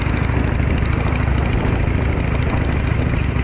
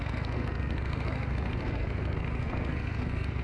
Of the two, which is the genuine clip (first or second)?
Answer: first